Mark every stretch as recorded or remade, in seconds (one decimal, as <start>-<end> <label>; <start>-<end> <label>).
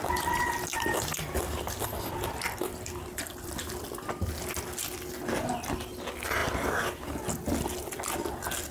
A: 0.0-0.7 recorded; 0.7-3.7 remade; 3.7-8.7 recorded